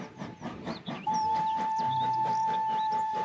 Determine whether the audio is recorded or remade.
remade